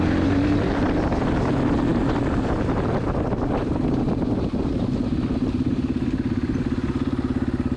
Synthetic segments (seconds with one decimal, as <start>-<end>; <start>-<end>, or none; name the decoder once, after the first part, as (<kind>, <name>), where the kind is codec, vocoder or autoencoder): none